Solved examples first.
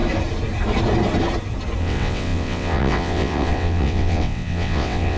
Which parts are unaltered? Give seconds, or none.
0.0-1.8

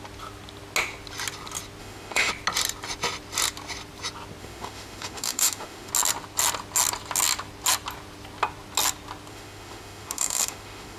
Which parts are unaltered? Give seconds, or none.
0.0-1.8; 2.3-4.4; 5.9-9.3

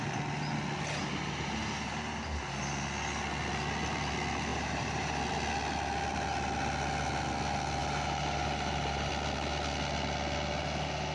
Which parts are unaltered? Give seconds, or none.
0.0-1.0; 2.6-4.5; 5.2-7.8; 9.1-11.1

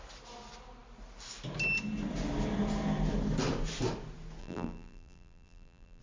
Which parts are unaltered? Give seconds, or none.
0.0-4.4

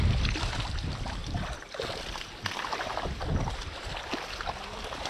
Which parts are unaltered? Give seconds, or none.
0.0-5.1

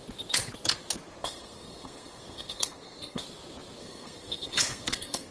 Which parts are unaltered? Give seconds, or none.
0.0-1.2; 3.2-3.8